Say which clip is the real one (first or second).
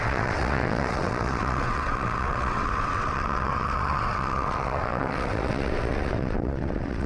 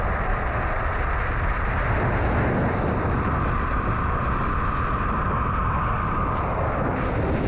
second